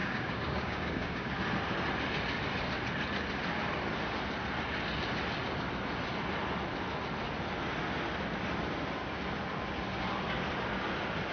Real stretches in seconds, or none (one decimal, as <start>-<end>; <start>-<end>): 1.3-11.3